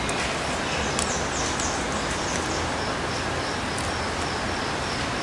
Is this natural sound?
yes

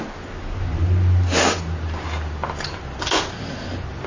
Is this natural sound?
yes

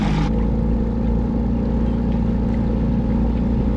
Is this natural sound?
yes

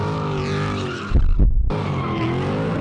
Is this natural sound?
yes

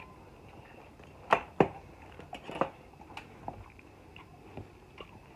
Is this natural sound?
yes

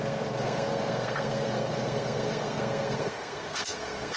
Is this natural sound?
no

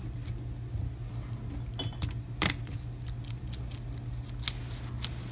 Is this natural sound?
yes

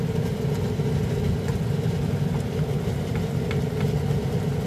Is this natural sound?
yes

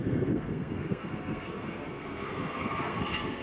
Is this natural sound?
no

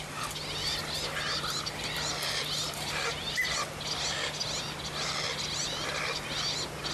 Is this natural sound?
yes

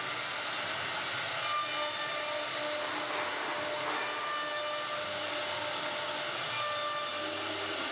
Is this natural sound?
yes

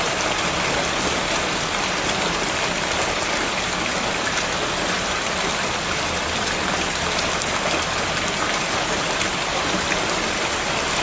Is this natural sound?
yes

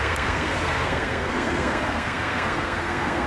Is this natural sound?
no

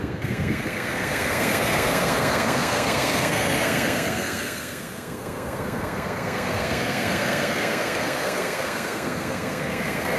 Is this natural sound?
no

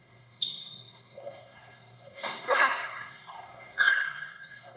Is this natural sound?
no